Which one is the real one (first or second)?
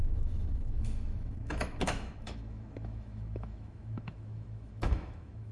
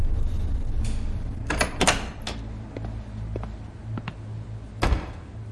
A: second